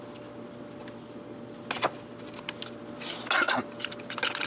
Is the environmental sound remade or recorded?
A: recorded